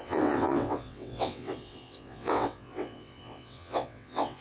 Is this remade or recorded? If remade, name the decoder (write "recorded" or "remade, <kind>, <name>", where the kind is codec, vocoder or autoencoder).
remade, vocoder, WaveNeXt